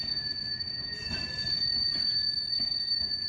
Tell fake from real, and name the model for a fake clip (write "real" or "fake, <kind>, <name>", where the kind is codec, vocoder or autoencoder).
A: fake, vocoder, BigVGAN v2